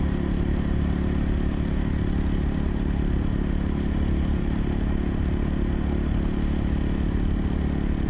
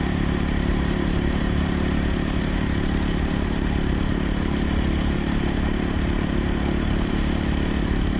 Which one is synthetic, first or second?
second